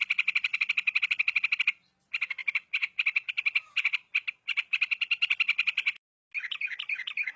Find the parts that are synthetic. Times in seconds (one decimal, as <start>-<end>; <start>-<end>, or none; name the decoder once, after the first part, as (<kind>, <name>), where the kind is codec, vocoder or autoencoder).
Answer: 0.5-1.0 (vocoder, BigVGAN v2); 2.4-6.2